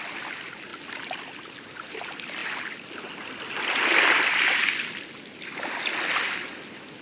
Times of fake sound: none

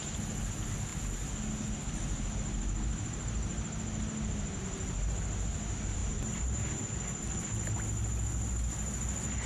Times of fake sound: none

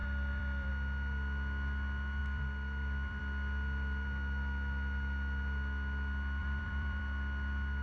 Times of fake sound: 0.0-0.7 (vocoder, BigVGAN v2); 2.2-3.2; 6.4-7.0

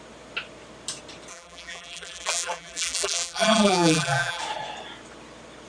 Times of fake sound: 1.3-4.4 (vocoder, BigVGAN v2)

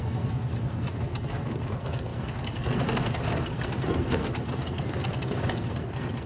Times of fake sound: 0.0-6.3 (codec, SNAC)

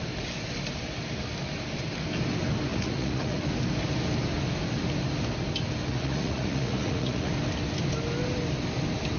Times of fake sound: 2.7-3.5 (vocoder, Vocos); 5.9-7.3

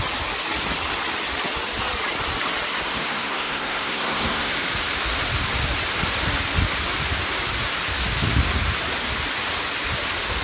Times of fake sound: 2.9-4.5 (codec, SNAC)

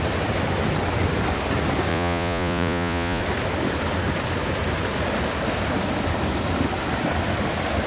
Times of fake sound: 1.9-3.2 (vocoder, Vocos)